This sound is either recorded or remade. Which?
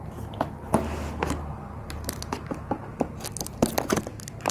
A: recorded